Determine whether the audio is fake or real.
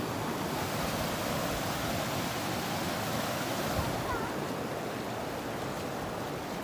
real